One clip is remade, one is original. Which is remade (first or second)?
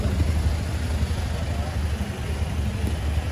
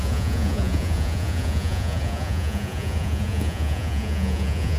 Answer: second